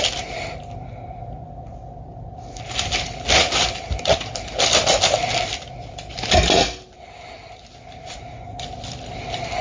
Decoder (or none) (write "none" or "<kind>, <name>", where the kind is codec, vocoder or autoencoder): vocoder, BigVGAN v2